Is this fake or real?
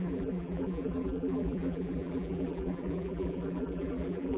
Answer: fake